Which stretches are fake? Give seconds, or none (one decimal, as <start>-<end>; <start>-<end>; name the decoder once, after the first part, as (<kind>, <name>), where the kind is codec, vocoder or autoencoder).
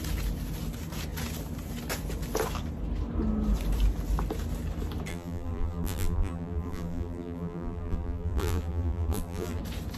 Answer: 5.1-9.6 (vocoder, BigVGAN v2)